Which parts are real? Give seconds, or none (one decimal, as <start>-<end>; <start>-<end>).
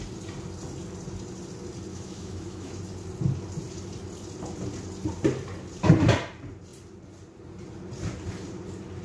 0.0-1.9; 2.8-9.0